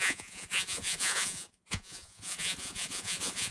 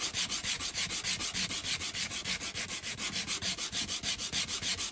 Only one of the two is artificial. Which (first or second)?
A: first